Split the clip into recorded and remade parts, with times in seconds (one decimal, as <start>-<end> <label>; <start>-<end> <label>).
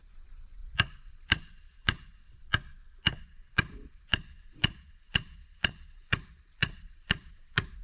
0.0-0.6 remade; 0.6-1.1 recorded; 1.1-2.4 remade; 2.4-3.2 recorded; 3.2-7.8 remade